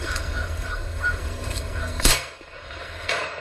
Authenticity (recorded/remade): remade